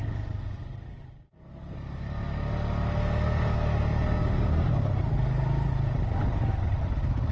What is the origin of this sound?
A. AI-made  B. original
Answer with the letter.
B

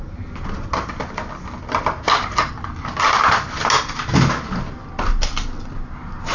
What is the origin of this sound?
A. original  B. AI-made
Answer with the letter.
A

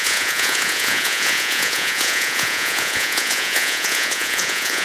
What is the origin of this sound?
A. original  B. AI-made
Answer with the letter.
B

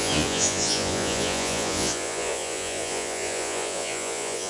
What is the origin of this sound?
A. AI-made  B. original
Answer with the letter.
A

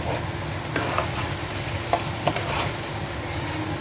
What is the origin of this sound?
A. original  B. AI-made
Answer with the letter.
A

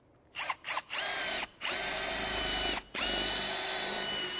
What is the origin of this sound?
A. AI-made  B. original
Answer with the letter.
A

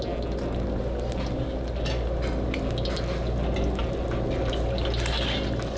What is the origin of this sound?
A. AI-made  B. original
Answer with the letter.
B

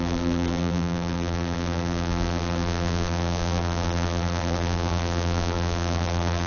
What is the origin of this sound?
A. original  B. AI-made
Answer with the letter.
B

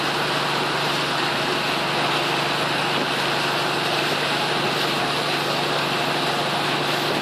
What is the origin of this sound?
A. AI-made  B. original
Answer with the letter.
B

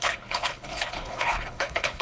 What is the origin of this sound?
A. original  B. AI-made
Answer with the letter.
B